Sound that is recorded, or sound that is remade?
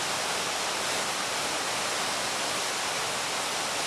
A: recorded